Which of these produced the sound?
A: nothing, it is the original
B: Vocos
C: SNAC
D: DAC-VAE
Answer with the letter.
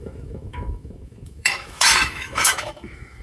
D